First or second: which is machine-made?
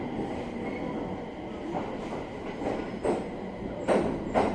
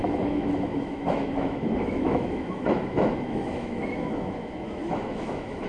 second